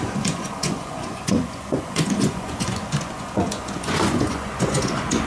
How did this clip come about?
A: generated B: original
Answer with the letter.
A